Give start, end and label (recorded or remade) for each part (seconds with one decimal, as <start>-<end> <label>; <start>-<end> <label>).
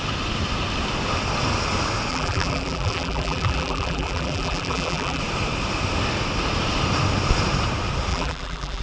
0.0-2.1 recorded; 2.1-5.2 remade; 5.2-8.1 recorded; 8.1-8.8 remade